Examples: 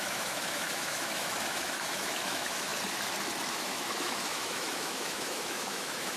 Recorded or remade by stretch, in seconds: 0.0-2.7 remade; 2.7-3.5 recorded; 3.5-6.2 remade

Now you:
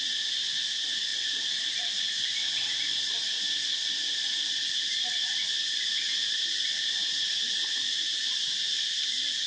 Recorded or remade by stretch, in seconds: 0.0-9.5 recorded

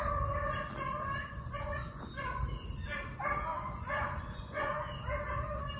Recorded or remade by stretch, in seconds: 0.0-1.2 recorded; 1.2-2.4 remade; 2.4-3.5 recorded; 3.5-5.0 remade; 5.0-5.8 recorded

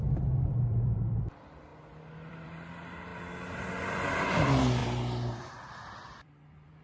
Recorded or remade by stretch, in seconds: 0.0-1.7 remade; 1.7-2.3 recorded; 2.3-3.1 remade; 3.1-3.7 recorded; 3.7-6.8 remade

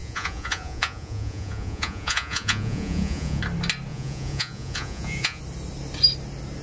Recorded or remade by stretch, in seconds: 0.0-3.4 remade; 3.4-3.9 recorded; 3.9-5.4 remade; 5.4-6.6 recorded

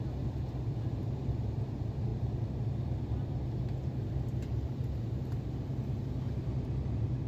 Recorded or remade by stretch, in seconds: 0.0-7.3 recorded